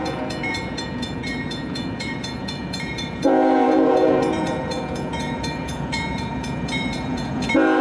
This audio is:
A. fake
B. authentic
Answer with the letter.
A